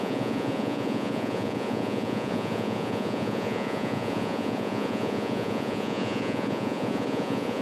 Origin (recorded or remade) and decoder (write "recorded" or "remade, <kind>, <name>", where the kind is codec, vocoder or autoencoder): remade, vocoder, Vocos